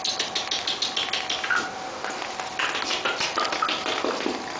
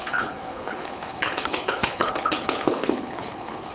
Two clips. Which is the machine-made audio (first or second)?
second